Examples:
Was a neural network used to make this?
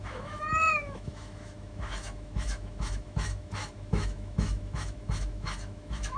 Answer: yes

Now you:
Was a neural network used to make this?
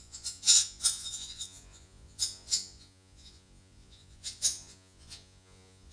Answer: yes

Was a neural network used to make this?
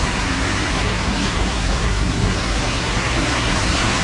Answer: yes